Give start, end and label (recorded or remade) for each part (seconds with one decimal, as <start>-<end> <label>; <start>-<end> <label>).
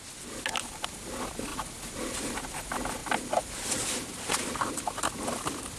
0.0-5.8 recorded